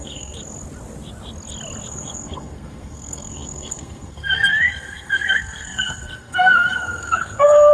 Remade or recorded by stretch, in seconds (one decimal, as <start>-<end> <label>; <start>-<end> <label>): 0.0-0.4 remade; 0.4-1.9 recorded; 1.9-7.7 remade